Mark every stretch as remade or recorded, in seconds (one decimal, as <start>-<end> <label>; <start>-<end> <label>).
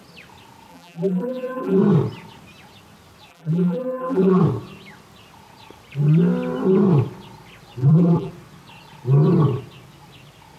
0.0-0.7 recorded; 0.7-1.8 remade; 1.8-3.3 recorded; 3.3-4.4 remade; 4.4-7.8 recorded; 7.8-8.3 remade; 8.3-10.6 recorded